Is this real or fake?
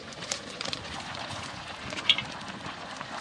fake